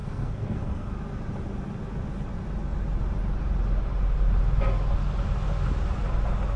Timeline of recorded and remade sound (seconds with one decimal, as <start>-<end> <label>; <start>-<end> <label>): 0.0-1.0 remade; 1.0-6.6 recorded